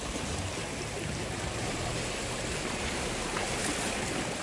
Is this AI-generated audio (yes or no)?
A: no